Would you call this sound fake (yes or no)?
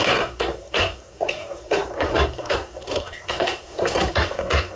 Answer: yes